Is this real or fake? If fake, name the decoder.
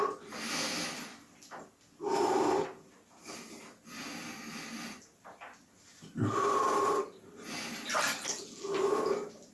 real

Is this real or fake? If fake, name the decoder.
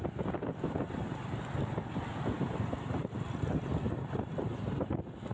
real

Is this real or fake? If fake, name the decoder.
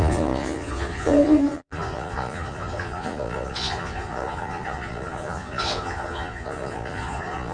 fake, vocoder, Vocos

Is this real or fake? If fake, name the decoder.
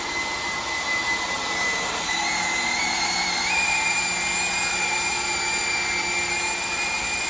real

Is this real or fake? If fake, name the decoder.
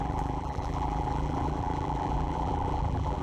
fake, vocoder, BigVGAN v2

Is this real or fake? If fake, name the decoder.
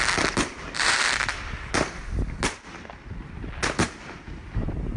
real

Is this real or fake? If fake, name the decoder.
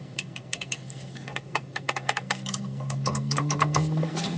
fake, codec, SNAC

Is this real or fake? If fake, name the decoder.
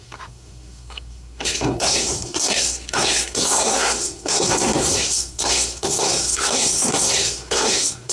fake, codec, SNAC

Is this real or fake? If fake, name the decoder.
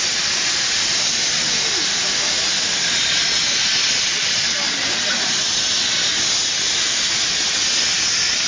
real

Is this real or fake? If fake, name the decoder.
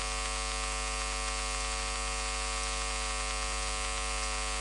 real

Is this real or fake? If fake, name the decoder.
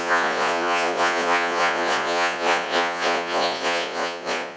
fake, vocoder, Vocos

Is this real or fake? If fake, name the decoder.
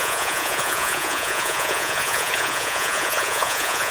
fake, vocoder, Vocos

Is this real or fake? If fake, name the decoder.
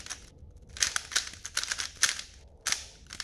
real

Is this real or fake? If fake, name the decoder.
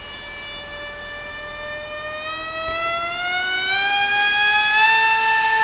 real